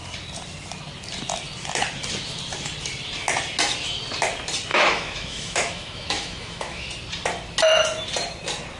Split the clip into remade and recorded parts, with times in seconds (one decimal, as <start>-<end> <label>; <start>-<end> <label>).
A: 0.0-4.7 recorded; 4.7-6.9 remade; 6.9-8.8 recorded